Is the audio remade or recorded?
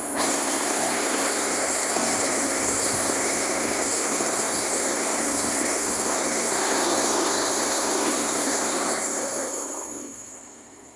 remade